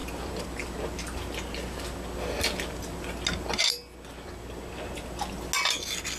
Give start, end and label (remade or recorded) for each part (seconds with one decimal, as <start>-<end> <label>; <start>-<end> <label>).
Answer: 0.0-6.2 recorded